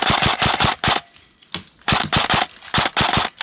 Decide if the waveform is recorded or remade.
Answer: recorded